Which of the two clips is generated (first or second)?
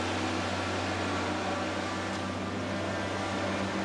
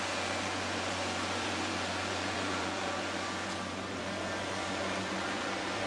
second